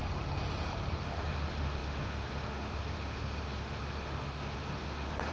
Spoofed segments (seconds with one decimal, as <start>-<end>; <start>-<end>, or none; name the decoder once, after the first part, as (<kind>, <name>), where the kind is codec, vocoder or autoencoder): 1.0-5.3 (autoencoder, DAC-VAE)